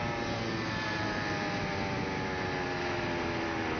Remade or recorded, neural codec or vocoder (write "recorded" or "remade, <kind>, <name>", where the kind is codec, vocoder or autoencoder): recorded